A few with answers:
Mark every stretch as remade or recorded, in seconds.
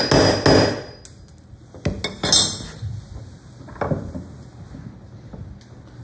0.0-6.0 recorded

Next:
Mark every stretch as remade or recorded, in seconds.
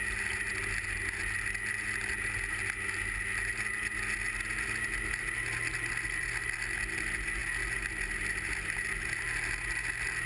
0.0-10.3 recorded